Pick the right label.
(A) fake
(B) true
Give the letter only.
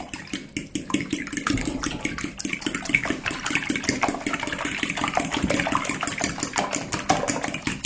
B